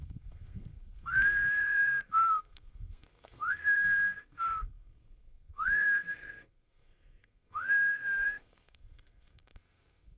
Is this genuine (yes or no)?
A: no